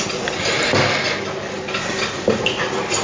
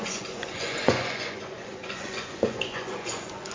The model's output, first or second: second